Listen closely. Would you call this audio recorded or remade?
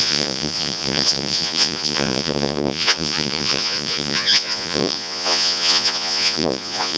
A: remade